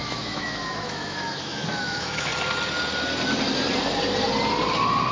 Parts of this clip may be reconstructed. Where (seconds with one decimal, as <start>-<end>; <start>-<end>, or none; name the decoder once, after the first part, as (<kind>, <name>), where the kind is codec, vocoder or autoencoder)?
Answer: 0.0-2.3 (autoencoder, DAC-VAE)